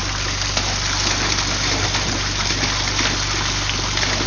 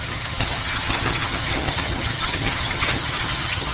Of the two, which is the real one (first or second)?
first